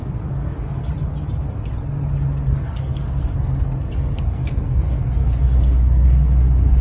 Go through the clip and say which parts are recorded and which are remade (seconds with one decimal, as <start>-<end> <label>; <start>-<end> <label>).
0.0-0.9 remade; 0.9-2.5 recorded; 2.5-6.8 remade